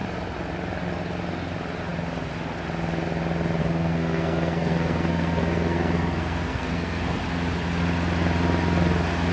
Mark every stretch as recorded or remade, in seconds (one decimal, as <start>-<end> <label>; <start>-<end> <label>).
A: 0.0-3.6 recorded; 3.6-7.2 remade; 7.2-9.3 recorded